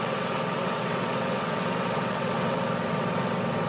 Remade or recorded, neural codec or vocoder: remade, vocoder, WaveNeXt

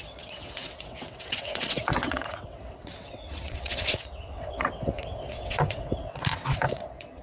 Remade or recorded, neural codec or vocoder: remade, vocoder, WaveNeXt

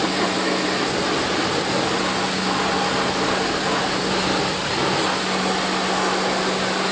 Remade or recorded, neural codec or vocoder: recorded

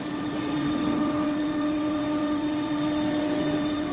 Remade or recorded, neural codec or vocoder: remade, vocoder, WaveNeXt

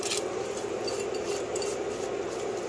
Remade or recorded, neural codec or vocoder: recorded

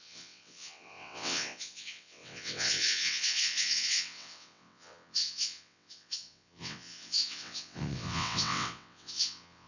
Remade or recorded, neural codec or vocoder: remade, vocoder, WaveNeXt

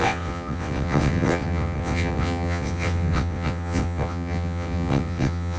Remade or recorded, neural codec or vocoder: remade, vocoder, WaveNeXt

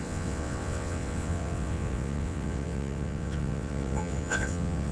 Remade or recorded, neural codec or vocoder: remade, vocoder, WaveNeXt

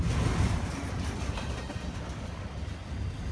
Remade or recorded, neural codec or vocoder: recorded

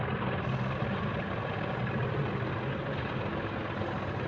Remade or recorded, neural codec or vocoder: recorded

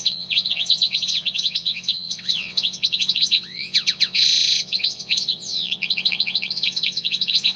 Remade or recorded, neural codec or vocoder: remade, vocoder, WaveNeXt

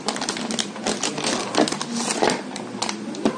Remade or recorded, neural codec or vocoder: recorded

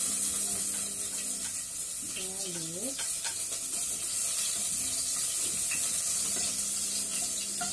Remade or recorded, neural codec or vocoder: recorded